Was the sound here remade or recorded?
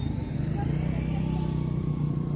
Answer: recorded